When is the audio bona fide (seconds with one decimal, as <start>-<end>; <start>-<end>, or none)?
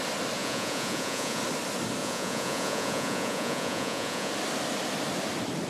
0.0-0.4; 1.4-2.0; 4.3-5.7